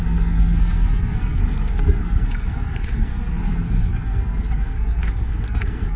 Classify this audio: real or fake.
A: fake